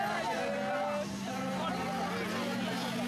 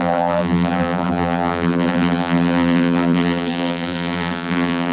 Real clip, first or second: first